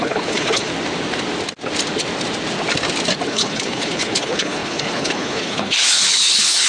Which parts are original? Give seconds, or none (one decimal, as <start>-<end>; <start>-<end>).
0.7-3.3